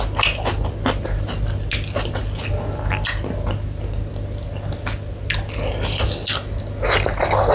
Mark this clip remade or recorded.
recorded